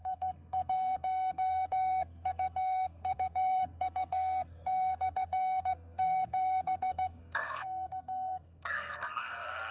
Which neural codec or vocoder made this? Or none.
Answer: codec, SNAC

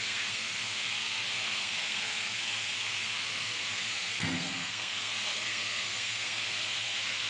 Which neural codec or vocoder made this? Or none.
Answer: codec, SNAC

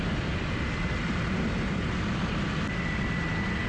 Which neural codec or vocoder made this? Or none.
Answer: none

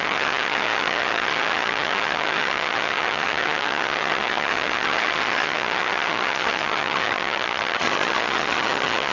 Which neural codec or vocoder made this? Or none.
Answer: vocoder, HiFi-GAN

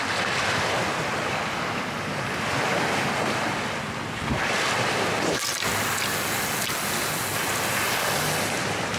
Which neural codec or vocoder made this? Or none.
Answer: none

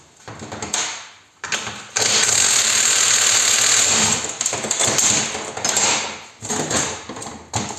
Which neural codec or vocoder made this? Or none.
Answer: none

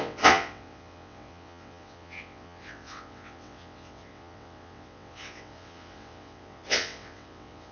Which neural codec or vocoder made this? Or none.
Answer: vocoder, WaveNeXt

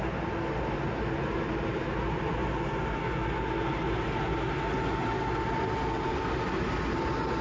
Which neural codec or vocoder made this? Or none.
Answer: none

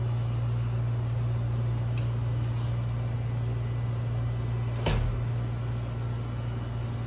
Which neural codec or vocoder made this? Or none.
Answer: none